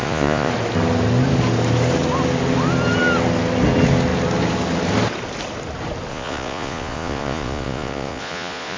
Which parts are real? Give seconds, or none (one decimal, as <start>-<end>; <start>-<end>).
0.5-6.1